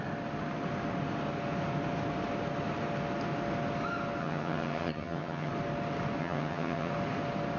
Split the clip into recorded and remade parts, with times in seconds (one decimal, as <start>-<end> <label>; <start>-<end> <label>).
0.0-4.2 recorded; 4.2-5.5 remade; 5.5-6.2 recorded; 6.2-6.9 remade; 6.9-7.6 recorded